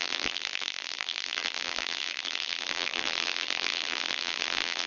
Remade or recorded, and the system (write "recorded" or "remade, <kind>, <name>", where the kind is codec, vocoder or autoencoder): remade, vocoder, BigVGAN v2